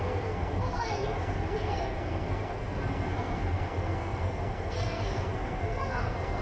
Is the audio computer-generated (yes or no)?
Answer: yes